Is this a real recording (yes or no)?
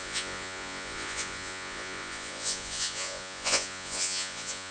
no